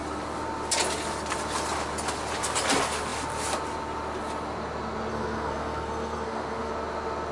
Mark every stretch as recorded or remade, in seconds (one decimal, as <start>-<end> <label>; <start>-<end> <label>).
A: 0.0-5.1 recorded; 5.1-6.7 remade; 6.7-7.3 recorded